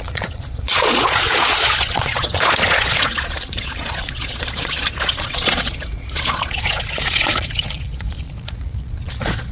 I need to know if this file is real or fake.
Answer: fake